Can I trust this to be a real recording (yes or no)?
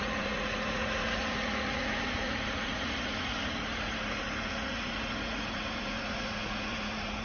no